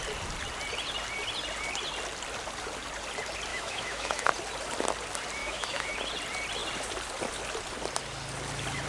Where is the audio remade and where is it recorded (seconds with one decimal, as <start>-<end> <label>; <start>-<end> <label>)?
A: 0.0-3.5 recorded; 3.5-4.3 remade; 4.3-5.4 recorded; 5.4-5.9 remade; 5.9-8.9 recorded